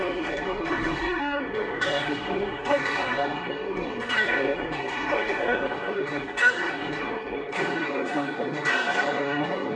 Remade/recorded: remade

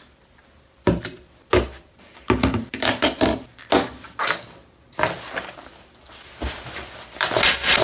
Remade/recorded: recorded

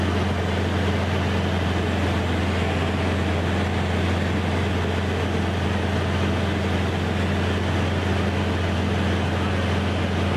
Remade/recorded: recorded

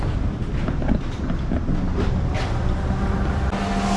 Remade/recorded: recorded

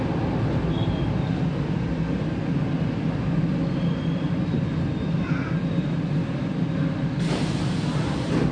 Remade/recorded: recorded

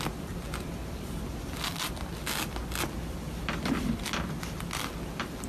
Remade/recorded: recorded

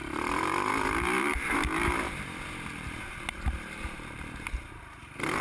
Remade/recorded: remade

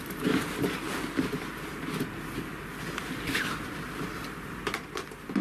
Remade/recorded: remade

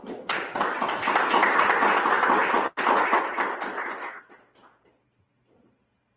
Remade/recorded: recorded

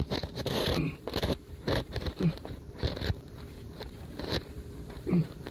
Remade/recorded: remade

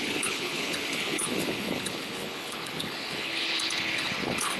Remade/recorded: remade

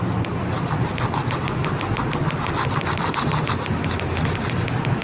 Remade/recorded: recorded